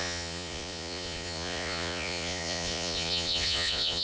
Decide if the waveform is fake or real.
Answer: fake